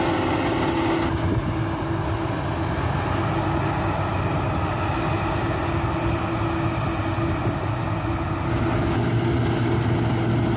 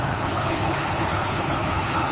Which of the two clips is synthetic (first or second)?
second